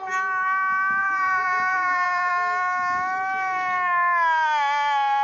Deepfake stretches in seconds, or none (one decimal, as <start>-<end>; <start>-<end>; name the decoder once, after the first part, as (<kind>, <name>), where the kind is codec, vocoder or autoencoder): 1.0-2.3 (vocoder, BigVGAN v2)